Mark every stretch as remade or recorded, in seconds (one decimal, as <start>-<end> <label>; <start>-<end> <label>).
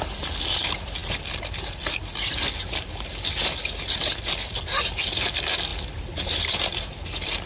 0.0-7.5 recorded